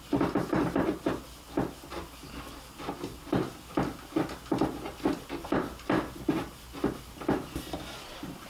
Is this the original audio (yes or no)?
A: yes